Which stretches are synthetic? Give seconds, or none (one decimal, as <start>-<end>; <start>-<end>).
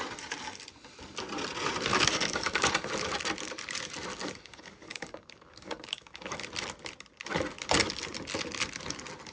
1.9-2.7; 4.1-6.4